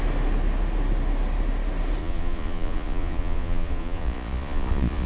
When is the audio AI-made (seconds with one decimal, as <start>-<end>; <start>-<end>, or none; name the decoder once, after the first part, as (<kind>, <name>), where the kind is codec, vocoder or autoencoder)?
2.0-5.1 (vocoder, Vocos)

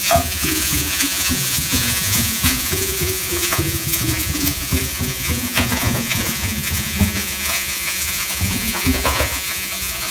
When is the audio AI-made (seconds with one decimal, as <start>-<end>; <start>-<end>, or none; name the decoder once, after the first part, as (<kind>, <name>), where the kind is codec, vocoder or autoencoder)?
0.0-10.1 (vocoder, Vocos)

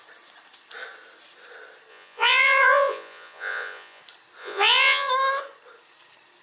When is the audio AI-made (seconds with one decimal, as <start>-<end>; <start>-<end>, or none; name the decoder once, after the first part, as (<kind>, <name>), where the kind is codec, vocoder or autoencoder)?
1.9-4.0 (vocoder, Vocos); 4.4-5.1

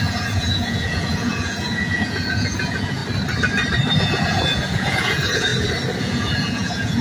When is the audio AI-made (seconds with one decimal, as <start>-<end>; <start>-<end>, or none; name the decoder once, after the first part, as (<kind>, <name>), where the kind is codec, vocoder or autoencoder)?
0.0-3.0 (vocoder, Vocos); 4.0-5.5; 6.0-7.0

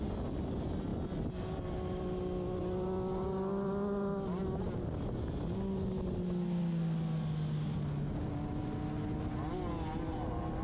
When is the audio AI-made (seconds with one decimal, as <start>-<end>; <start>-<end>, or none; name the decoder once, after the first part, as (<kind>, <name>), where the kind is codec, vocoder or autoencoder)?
none

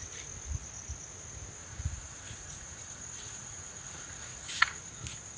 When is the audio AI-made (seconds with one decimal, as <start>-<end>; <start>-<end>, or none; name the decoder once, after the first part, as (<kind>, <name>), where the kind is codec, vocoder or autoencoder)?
1.6-4.8 (vocoder, Vocos)